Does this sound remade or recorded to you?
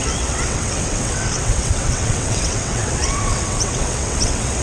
remade